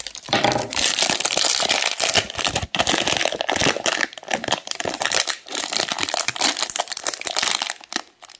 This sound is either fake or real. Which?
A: fake